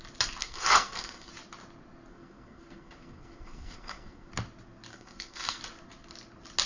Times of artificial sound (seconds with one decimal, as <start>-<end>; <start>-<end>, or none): 0.4-1.3; 2.1-4.3; 4.9-5.6